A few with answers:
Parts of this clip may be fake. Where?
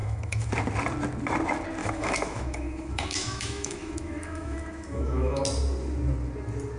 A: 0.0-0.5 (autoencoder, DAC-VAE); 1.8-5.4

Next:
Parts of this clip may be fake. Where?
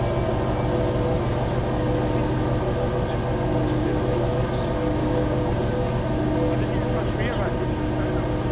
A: 5.0-5.5 (codec, DAC)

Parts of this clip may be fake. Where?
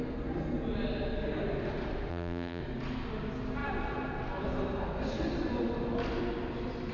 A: 2.1-2.6 (vocoder, BigVGAN v2)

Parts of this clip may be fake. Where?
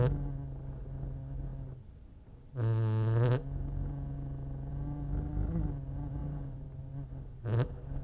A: 6.2-6.9 (vocoder, BigVGAN v2)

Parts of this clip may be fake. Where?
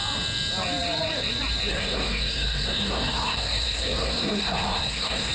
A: 1.7-5.3 (codec, SNAC)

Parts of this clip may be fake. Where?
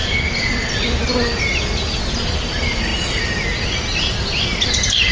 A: none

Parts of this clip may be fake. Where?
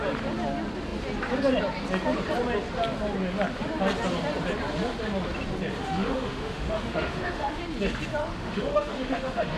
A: 5.8-7.6 (autoencoder, DAC-VAE); 8.2-9.6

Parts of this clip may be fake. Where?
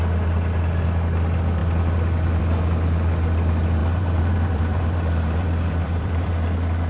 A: 3.8-6.3 (vocoder, BigVGAN v2)